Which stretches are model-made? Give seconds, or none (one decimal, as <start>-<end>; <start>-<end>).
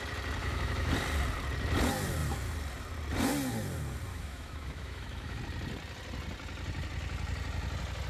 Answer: 0.4-0.9; 4.1-5.4